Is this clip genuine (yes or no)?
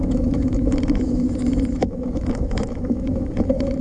no